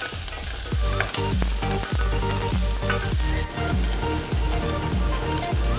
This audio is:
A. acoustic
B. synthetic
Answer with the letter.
A